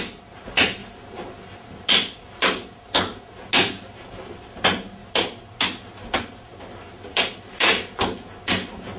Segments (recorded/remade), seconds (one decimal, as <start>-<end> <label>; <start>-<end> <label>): 0.0-9.0 recorded